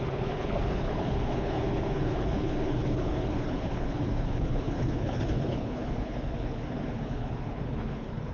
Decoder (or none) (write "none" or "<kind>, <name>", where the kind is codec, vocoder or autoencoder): codec, HILCodec